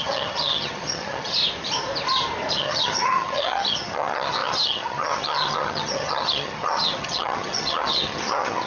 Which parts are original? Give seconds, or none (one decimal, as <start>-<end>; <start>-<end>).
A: 1.4-2.5